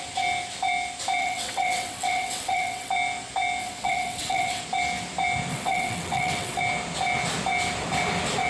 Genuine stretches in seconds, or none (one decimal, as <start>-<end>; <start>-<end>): 0.0-1.2; 2.9-3.6; 4.6-5.5; 6.6-8.5